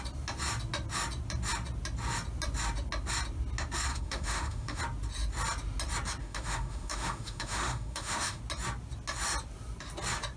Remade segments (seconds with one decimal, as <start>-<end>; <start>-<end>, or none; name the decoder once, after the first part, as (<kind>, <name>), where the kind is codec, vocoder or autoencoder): 3.9-4.8 (autoencoder, DAC-VAE); 6.2-8.4